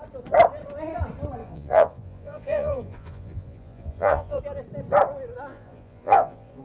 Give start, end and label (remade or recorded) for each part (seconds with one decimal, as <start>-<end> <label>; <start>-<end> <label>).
0.0-1.4 recorded; 1.4-4.4 remade; 4.4-5.5 recorded; 5.5-6.6 remade